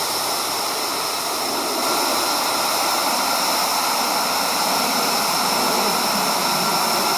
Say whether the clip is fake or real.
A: real